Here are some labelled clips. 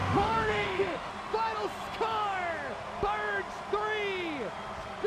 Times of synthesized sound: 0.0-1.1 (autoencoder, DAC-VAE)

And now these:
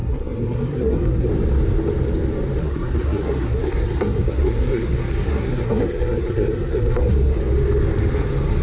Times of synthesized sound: 0.0-1.3 (codec, SNAC); 2.6-7.4

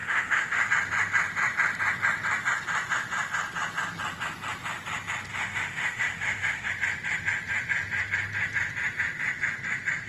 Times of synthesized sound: 0.0-0.7 (autoencoder, DAC-VAE); 5.3-6.7

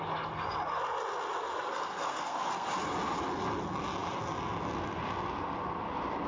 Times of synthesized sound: 1.7-2.7 (codec, SNAC)